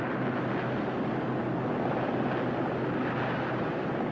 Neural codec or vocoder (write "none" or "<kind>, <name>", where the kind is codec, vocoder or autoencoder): none